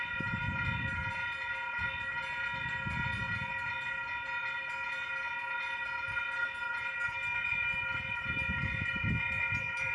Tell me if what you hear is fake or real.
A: real